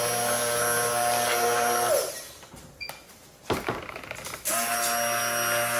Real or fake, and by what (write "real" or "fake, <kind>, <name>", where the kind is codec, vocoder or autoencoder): real